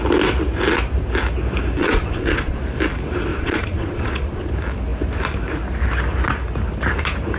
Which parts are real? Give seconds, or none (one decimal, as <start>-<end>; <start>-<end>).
0.0-1.8; 2.6-3.3; 4.5-7.4